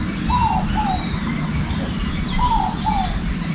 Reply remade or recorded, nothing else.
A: recorded